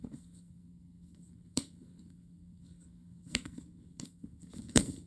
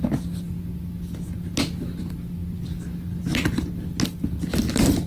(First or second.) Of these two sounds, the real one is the second